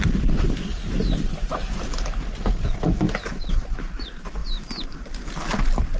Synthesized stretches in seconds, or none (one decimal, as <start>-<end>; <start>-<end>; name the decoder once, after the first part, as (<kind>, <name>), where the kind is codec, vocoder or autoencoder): 4.4-5.3 (vocoder, BigVGAN v2)